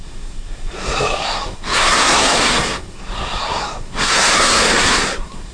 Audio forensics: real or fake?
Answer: fake